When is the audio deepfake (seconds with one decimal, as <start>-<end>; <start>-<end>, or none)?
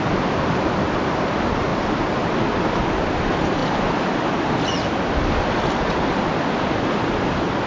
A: none